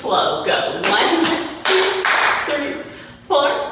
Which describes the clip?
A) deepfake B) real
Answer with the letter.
A